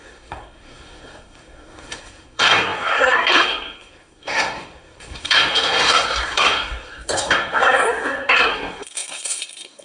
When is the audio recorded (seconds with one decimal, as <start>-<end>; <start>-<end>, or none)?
none

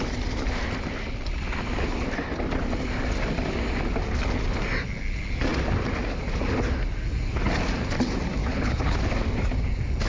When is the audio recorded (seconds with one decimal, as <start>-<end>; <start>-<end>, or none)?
0.0-8.4; 9.0-10.1

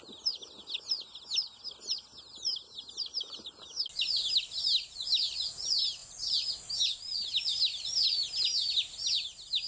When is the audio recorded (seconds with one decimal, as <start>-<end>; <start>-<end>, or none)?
0.0-6.0; 6.5-9.7

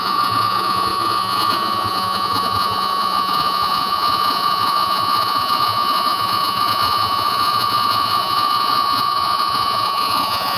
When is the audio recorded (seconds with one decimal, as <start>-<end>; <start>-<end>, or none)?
none

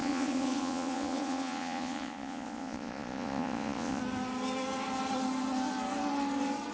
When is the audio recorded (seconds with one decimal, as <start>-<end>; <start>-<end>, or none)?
4.0-6.7

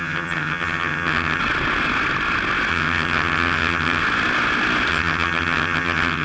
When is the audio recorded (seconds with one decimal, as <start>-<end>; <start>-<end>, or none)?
1.4-2.7; 4.0-4.9

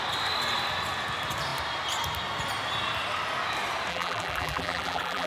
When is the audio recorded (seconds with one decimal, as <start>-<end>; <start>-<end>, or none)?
0.0-3.9

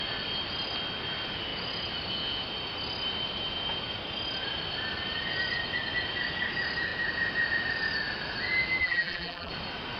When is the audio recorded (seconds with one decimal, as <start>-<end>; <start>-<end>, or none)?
0.0-8.8; 9.5-10.0